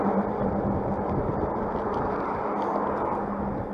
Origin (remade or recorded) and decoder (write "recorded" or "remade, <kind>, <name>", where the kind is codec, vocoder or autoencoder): recorded